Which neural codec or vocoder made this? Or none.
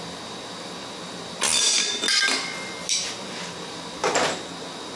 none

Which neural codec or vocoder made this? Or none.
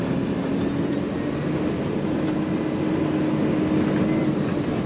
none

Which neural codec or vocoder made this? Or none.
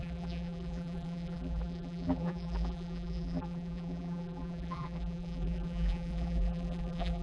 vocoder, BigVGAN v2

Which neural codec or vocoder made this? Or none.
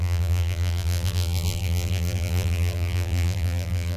vocoder, BigVGAN v2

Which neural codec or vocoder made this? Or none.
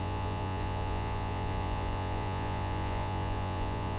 vocoder, Vocos